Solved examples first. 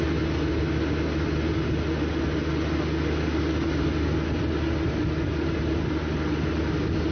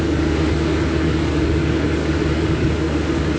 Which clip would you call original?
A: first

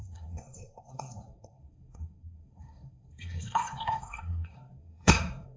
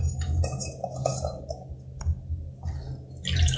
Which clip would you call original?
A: second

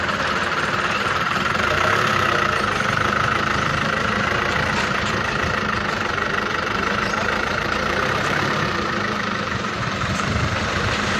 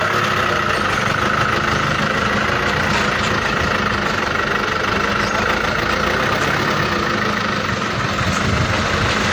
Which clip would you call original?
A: second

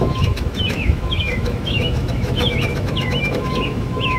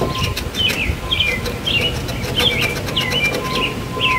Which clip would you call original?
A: second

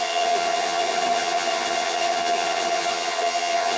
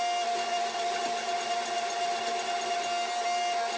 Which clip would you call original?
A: second